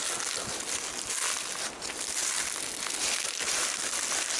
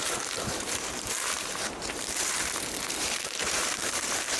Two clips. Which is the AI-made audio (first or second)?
second